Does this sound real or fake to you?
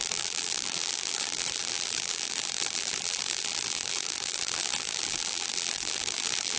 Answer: fake